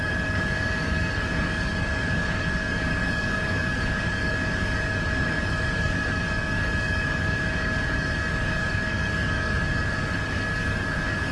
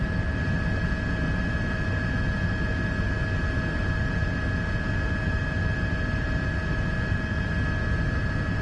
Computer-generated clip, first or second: first